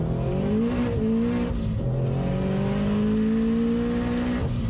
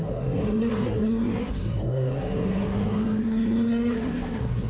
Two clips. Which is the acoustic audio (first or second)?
first